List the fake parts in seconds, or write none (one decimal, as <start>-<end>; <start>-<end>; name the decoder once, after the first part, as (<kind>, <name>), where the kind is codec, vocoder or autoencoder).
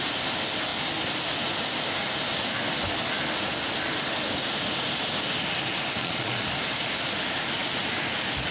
6.0-6.5 (vocoder, Vocos)